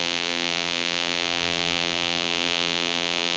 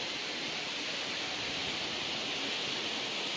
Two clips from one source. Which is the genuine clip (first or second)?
second